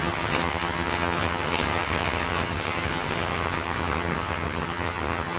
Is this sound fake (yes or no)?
yes